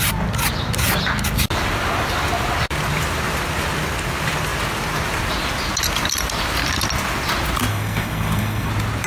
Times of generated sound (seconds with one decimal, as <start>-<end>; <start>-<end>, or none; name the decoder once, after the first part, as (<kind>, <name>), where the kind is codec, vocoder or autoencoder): 7.7-8.7 (codec, SNAC)